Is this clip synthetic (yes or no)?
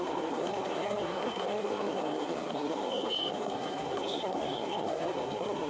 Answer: yes